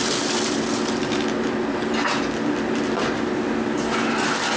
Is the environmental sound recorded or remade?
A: recorded